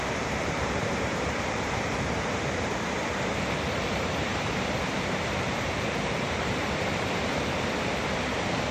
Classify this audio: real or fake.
fake